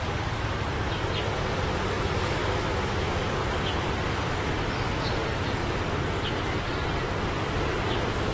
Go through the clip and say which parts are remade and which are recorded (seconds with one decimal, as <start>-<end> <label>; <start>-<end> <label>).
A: 0.0-2.4 recorded; 2.4-3.3 remade; 3.3-8.3 recorded